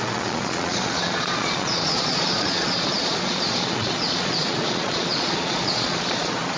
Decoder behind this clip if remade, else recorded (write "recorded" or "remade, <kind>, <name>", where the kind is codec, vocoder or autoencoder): remade, vocoder, Vocos